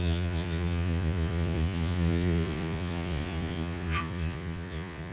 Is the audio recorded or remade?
remade